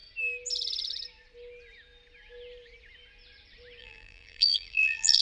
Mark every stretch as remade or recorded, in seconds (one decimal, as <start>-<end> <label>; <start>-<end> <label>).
0.0-3.8 recorded; 3.8-5.2 remade